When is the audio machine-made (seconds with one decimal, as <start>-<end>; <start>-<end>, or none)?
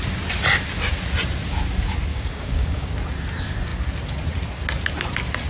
2.1-2.9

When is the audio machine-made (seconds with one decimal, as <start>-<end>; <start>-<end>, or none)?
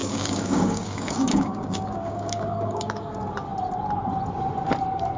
0.0-3.1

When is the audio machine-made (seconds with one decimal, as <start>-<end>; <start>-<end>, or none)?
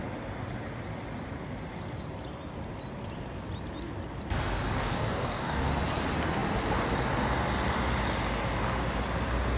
4.8-5.7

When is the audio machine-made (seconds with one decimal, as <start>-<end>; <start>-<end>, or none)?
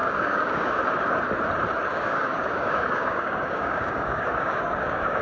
0.0-0.8; 1.9-5.2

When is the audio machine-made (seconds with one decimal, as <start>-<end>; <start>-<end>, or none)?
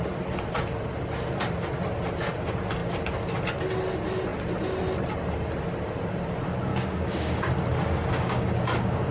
6.7-7.4; 8.1-9.1